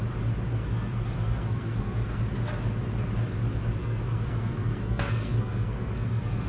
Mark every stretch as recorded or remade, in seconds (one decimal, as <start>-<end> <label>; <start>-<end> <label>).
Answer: 0.0-0.5 recorded; 0.5-2.2 remade; 2.2-3.8 recorded; 3.8-6.5 remade